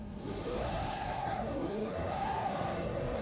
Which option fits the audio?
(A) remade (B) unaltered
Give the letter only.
A